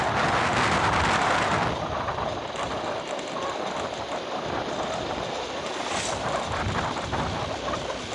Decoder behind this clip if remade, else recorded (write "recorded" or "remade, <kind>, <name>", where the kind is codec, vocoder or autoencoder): recorded